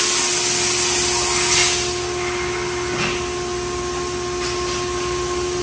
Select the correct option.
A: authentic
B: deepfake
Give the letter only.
A